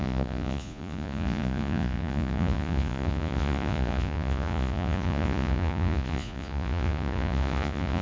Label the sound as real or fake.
fake